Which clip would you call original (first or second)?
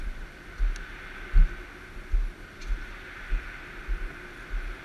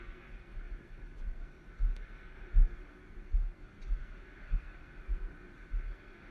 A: first